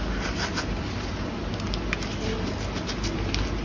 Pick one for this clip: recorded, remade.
recorded